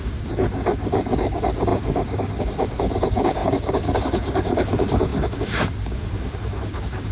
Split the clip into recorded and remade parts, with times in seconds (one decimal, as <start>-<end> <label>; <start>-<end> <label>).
0.0-7.1 remade